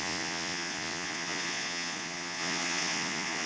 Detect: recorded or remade remade